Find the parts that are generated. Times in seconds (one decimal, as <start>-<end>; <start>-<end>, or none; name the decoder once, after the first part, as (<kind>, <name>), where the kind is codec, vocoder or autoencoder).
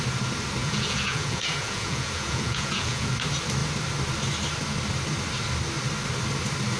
0.6-3.1 (vocoder, Vocos)